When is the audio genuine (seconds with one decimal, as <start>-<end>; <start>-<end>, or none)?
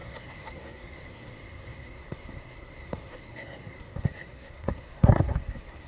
none